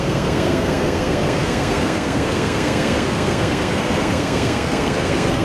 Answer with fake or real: fake